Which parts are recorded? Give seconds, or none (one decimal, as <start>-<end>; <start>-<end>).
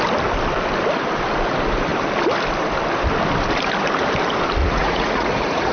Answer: 0.0-4.6